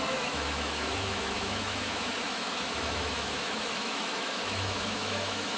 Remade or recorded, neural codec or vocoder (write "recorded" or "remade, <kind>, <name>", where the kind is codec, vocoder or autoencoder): remade, autoencoder, DAC-VAE